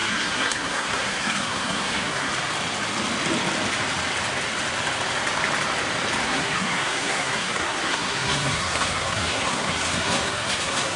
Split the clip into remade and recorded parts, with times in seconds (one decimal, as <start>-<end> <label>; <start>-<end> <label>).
0.0-2.3 remade; 2.3-6.2 recorded; 6.2-11.0 remade